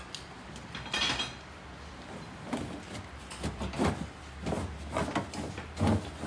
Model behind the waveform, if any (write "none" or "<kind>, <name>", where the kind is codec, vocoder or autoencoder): none